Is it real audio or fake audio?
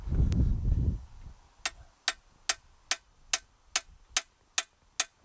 real